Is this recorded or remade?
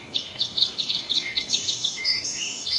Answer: remade